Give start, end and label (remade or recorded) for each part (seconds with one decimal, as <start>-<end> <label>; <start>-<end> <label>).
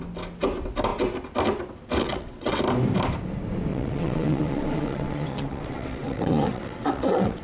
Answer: 0.0-2.0 recorded; 2.0-2.6 remade; 2.6-3.7 recorded; 3.7-7.4 remade